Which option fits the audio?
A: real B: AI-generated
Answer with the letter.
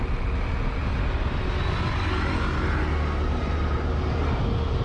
A